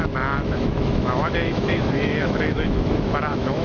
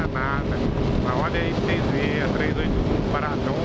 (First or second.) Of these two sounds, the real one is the second